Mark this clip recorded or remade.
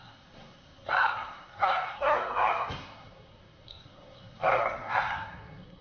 remade